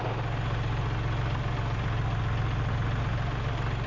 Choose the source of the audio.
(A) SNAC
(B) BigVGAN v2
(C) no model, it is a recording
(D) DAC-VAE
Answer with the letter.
C